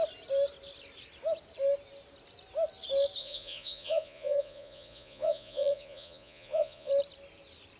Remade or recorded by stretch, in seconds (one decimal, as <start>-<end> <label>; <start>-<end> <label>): 0.0-3.2 recorded; 3.2-6.9 remade; 6.9-7.8 recorded